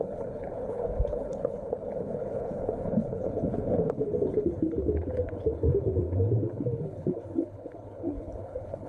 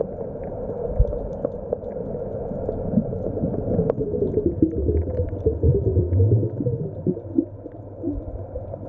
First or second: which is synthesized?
first